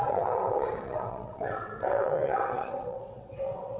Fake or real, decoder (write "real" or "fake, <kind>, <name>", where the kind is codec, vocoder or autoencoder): fake, vocoder, WaveNeXt